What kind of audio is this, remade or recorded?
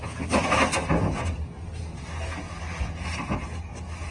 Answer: recorded